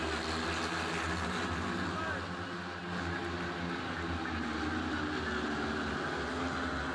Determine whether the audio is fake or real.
real